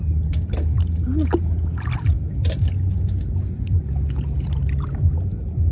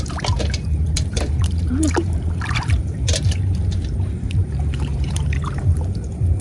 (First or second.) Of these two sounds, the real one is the first